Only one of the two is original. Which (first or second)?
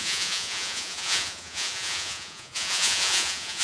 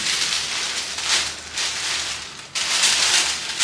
second